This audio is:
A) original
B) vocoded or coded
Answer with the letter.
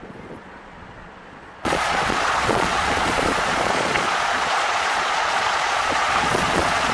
B